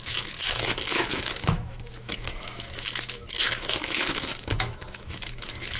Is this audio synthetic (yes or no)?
yes